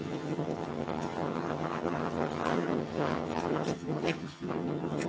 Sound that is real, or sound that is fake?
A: fake